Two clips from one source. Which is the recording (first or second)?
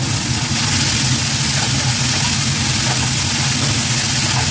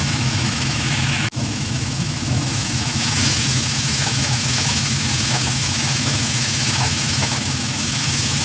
first